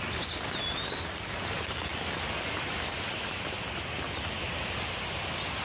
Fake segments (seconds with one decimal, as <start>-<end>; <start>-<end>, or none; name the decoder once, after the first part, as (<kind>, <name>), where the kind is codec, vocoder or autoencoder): none